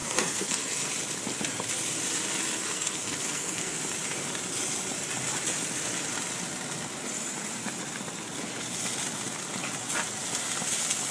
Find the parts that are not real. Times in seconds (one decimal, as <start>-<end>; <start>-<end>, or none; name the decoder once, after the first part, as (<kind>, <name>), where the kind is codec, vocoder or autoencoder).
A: 0.0-0.9 (codec, SNAC); 2.6-3.8